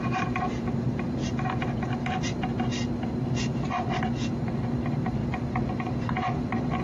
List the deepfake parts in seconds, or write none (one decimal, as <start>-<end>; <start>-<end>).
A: 0.0-1.2; 3.2-5.2; 5.7-6.8